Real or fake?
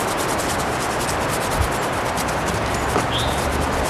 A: real